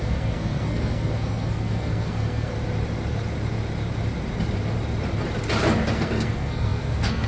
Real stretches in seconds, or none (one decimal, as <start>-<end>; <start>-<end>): 2.5-5.9